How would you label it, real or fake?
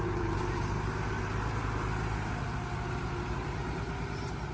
real